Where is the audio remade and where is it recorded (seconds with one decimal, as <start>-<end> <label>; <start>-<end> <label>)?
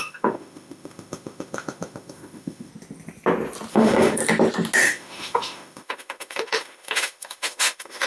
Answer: 0.0-2.7 remade; 2.7-3.7 recorded; 3.7-4.2 remade; 4.2-4.8 recorded; 4.8-8.1 remade